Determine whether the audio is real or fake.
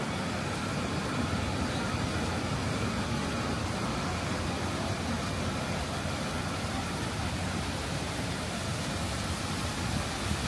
real